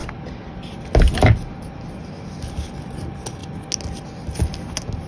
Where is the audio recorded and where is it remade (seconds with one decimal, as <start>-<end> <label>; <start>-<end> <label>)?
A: 0.0-5.1 recorded